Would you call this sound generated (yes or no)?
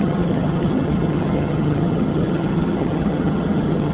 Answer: yes